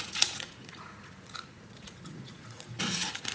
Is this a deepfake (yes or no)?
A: yes